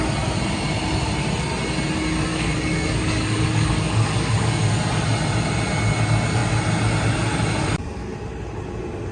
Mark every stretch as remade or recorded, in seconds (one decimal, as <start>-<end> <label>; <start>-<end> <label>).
0.0-2.3 recorded; 2.3-4.6 remade; 4.6-9.1 recorded